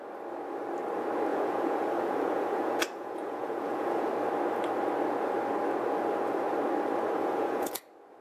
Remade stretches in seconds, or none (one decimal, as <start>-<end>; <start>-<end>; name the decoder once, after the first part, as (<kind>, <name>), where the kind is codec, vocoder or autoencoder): 1.3-4.1 (vocoder, Vocos); 7.2-7.7